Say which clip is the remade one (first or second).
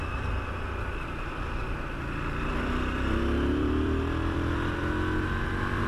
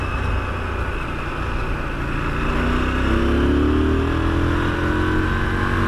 first